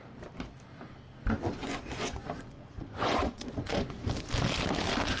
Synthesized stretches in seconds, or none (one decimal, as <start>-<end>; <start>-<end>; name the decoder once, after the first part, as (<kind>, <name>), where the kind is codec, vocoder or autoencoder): 1.6-4.0 (vocoder, Vocos)

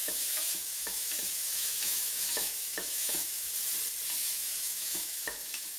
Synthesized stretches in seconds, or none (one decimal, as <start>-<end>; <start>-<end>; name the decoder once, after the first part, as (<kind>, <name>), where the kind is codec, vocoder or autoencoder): 0.0-3.5 (autoencoder, DAC-VAE); 4.2-5.8

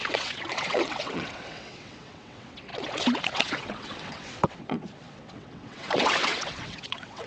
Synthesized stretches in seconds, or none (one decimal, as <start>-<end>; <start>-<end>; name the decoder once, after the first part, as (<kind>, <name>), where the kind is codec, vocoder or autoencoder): 0.0-7.3 (vocoder, WaveNeXt)